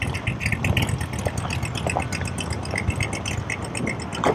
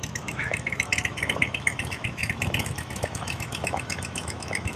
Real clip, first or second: first